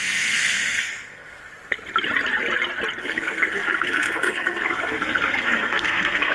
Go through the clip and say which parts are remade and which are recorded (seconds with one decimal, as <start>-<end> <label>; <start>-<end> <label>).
0.0-1.4 remade; 1.4-3.0 recorded; 3.0-6.3 remade